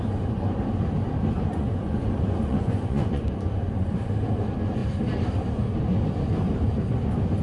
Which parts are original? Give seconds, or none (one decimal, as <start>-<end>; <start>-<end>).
0.0-1.5; 3.2-7.4